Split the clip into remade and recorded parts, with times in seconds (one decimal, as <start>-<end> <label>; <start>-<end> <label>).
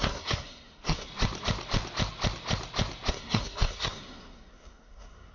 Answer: 0.0-1.1 remade; 1.1-3.1 recorded; 3.1-5.3 remade